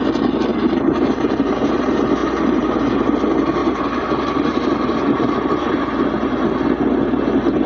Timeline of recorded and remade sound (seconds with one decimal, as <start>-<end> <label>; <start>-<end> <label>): 0.0-0.5 recorded; 0.5-1.8 remade; 1.8-3.6 recorded; 3.6-5.7 remade; 5.7-7.7 recorded